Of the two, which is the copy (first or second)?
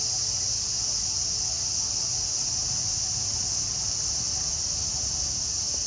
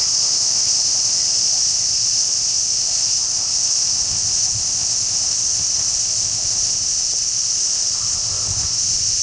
second